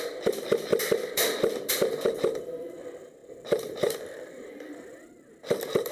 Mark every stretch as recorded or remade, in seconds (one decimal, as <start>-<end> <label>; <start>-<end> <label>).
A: 0.0-5.9 remade